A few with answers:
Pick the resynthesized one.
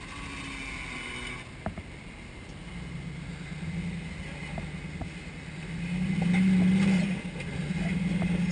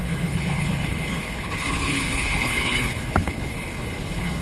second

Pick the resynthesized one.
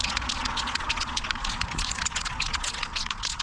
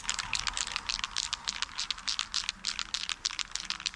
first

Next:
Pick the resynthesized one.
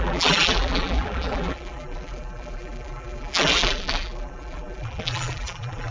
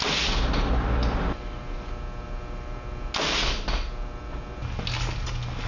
first